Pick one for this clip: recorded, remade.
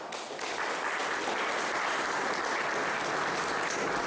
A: recorded